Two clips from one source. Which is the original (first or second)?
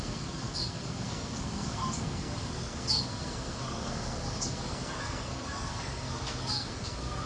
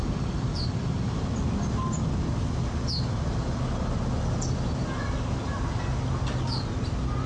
second